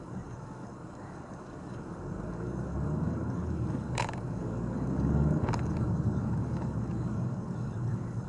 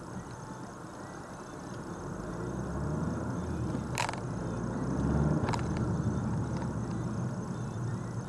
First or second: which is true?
second